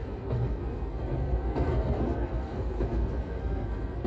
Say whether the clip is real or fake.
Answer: fake